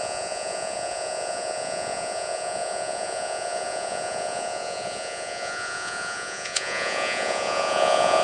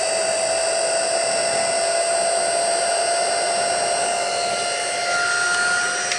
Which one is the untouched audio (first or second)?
second